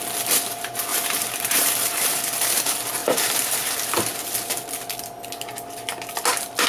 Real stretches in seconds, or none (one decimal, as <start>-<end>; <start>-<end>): 0.0-0.9; 2.2-3.0; 3.7-6.7